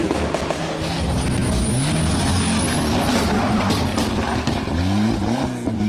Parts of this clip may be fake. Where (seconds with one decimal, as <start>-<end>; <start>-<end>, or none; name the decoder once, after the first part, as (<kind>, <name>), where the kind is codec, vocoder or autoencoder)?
3.9-4.8 (vocoder, BigVGAN v2)